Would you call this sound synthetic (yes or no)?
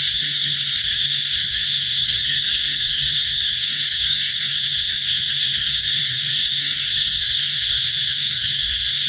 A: yes